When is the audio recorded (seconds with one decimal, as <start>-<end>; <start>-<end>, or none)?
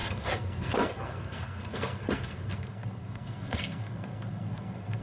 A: none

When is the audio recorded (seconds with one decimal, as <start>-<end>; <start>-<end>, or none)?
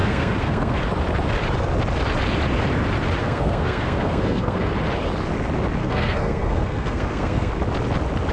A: 0.8-3.2; 4.7-5.8; 7.5-8.3